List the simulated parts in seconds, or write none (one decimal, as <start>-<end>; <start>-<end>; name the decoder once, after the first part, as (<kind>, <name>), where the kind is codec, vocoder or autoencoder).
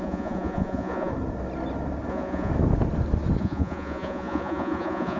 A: 0.0-1.1 (vocoder, Vocos); 2.1-2.5; 3.4-5.2